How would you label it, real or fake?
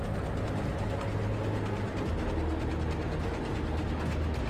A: real